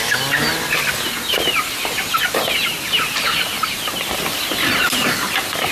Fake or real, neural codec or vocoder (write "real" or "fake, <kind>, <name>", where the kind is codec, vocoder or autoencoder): real